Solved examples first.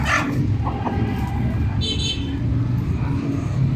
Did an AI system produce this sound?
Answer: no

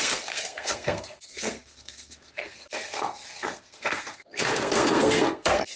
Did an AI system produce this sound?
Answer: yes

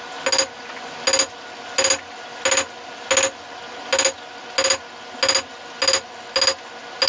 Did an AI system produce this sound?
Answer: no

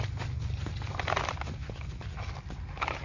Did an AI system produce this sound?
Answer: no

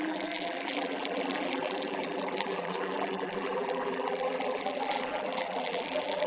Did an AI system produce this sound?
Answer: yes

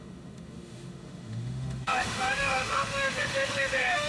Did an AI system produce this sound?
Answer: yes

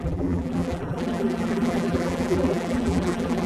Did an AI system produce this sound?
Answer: yes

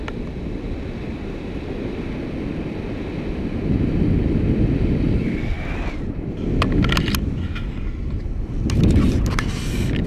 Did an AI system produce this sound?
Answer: no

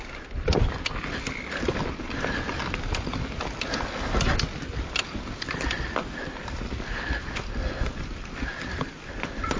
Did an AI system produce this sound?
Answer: no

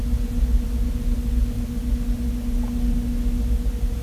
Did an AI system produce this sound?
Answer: no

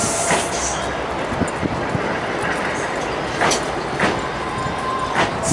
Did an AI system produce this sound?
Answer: no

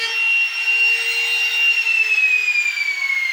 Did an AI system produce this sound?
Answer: no